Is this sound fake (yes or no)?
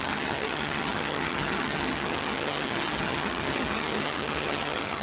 yes